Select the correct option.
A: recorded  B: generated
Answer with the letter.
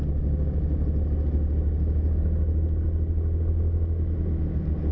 A